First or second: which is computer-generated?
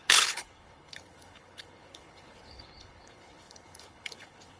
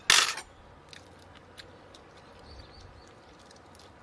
first